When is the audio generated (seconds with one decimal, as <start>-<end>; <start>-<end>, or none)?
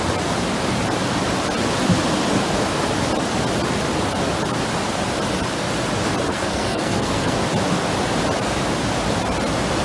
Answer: 6.3-7.4